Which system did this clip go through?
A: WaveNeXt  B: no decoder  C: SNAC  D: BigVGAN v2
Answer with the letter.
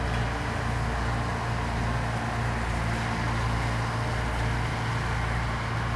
B